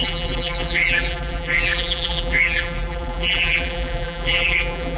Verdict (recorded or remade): remade